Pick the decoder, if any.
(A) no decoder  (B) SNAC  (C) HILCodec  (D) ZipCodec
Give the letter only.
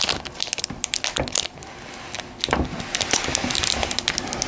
A